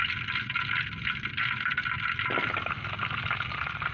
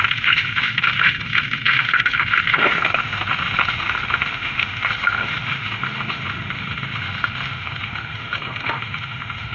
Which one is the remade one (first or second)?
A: second